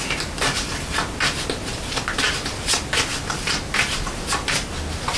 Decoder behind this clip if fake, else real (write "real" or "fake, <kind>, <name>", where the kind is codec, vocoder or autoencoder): real